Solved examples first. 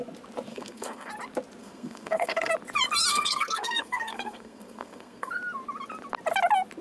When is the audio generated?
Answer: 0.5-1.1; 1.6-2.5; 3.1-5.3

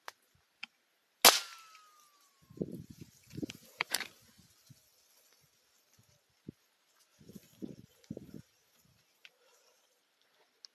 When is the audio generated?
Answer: 2.3-4.1; 7.1-9.6

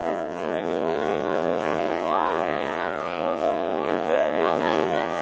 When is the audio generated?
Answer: 0.0-5.2

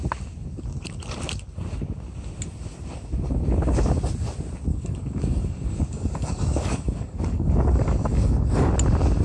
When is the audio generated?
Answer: 4.7-8.7

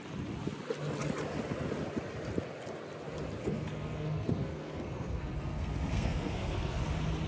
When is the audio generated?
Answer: 3.4-6.8